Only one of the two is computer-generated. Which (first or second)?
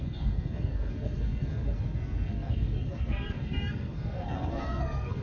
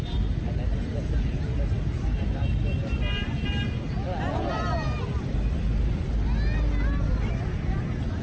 first